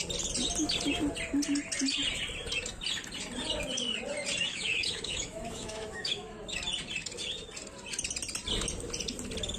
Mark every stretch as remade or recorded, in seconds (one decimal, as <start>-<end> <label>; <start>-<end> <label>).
0.0-4.5 recorded; 4.5-6.4 remade; 6.4-9.6 recorded